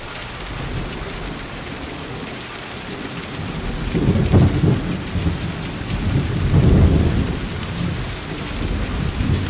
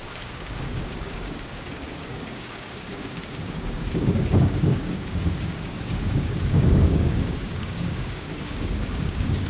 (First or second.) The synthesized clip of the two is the second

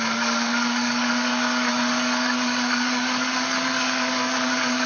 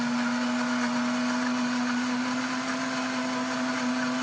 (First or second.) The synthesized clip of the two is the first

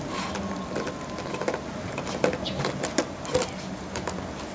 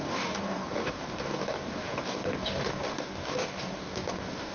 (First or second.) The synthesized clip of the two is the second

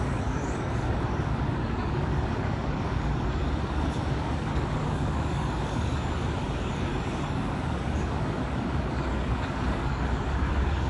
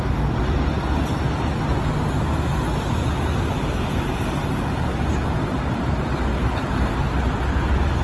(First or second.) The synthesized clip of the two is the first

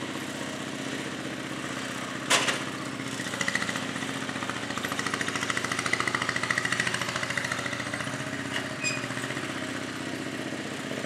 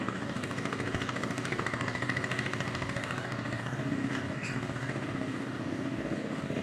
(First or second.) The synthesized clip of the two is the second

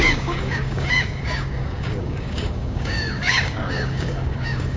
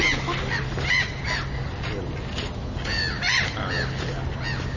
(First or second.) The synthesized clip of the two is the first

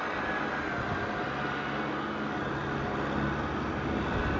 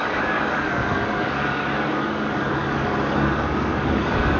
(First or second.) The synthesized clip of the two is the second